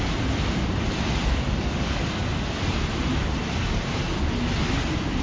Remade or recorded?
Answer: recorded